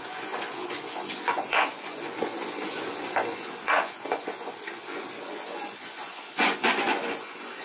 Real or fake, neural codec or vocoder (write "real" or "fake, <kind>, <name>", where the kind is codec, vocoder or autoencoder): fake, vocoder, Vocos